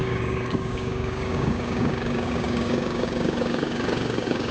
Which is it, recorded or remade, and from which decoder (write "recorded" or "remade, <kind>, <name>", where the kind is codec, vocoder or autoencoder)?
remade, codec, DAC